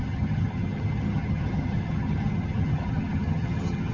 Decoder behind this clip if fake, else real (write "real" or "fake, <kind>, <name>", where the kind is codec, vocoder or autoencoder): fake, vocoder, HiFi-GAN